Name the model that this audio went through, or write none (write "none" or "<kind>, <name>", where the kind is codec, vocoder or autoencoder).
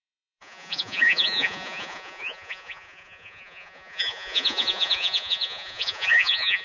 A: vocoder, Vocos